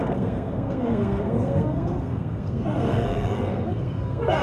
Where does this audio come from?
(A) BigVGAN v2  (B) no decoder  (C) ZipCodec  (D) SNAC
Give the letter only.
D